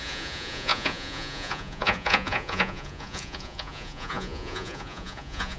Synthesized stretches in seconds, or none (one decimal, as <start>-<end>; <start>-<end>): 0.0-5.6

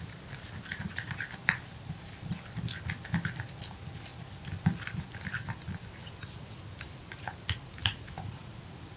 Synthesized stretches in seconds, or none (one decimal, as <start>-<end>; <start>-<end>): 0.7-1.2; 7.8-8.6